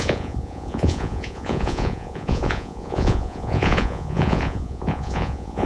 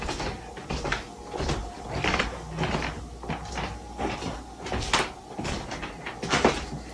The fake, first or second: first